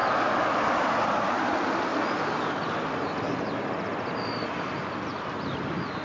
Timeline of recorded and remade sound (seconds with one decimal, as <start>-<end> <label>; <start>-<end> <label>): 0.0-6.0 recorded